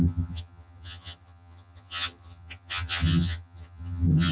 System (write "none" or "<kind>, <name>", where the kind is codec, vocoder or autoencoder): vocoder, HiFi-GAN